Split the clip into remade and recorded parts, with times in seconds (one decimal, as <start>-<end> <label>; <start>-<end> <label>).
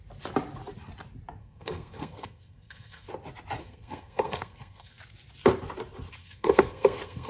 0.0-1.4 recorded; 1.4-3.1 remade; 3.1-3.6 recorded; 3.6-5.0 remade; 5.0-6.2 recorded; 6.2-7.3 remade